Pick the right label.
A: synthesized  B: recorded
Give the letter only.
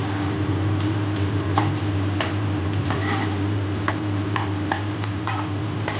A